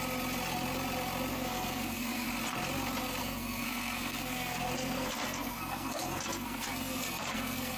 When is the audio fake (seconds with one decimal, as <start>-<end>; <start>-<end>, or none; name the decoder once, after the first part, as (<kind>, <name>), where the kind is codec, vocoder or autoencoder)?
1.3-2.3 (codec, SNAC); 3.2-7.8